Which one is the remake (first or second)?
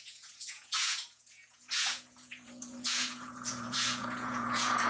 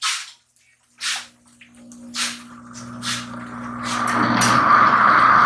first